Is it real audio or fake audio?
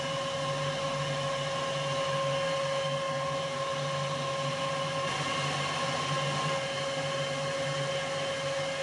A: real